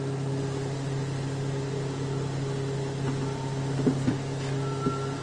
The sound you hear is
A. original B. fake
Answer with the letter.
A